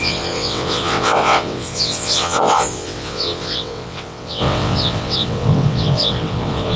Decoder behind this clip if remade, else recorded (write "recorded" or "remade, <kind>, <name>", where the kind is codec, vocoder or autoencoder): remade, vocoder, WaveNeXt